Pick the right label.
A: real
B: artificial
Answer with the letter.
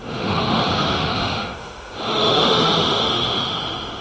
B